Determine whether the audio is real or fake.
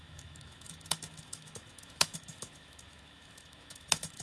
fake